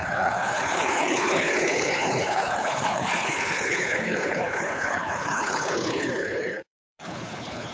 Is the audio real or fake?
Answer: fake